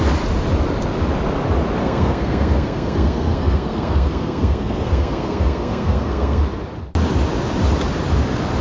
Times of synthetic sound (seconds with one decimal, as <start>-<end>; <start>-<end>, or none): 1.8-6.4